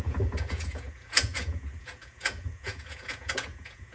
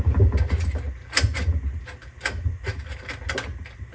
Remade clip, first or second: first